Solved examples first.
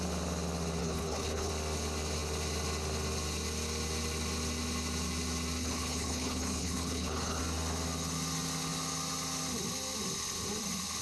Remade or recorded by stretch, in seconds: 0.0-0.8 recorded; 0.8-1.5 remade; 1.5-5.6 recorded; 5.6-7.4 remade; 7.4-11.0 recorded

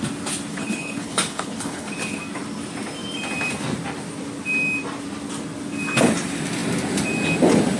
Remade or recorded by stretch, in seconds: 0.0-0.5 recorded; 0.5-2.2 remade; 2.2-7.8 recorded

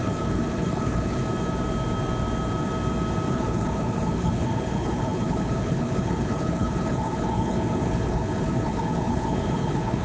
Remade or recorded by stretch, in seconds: 0.0-1.2 remade; 1.2-3.3 recorded; 3.3-10.0 remade